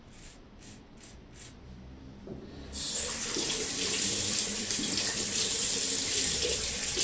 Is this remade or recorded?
remade